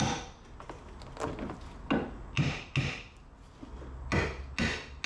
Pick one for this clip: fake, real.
real